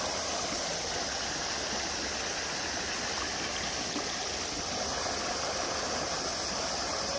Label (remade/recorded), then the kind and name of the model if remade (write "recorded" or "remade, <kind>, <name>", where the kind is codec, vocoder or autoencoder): recorded